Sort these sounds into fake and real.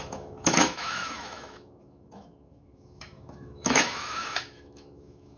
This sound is fake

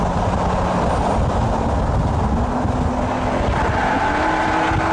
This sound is real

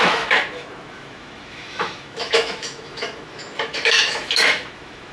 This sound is fake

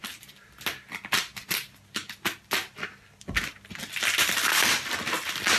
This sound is real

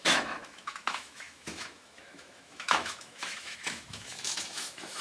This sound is fake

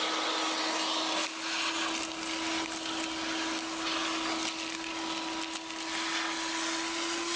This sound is real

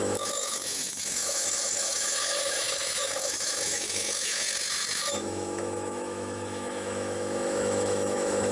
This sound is fake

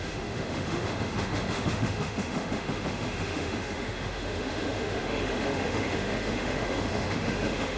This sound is fake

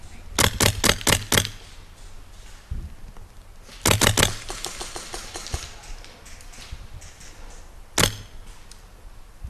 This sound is real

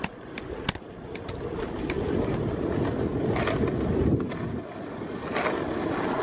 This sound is real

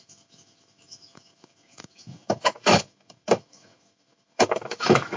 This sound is fake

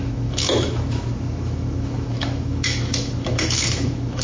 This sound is fake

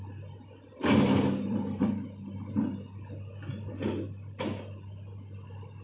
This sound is real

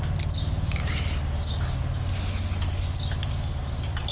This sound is real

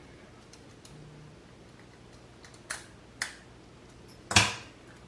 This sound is real